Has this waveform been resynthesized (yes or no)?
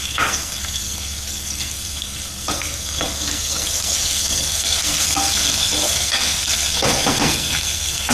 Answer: yes